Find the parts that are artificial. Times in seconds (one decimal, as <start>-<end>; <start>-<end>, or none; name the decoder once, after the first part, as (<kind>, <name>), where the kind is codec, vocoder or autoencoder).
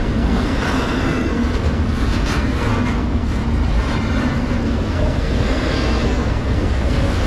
0.0-3.4 (codec, SNAC); 4.3-7.3